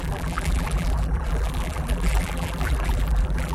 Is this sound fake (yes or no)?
yes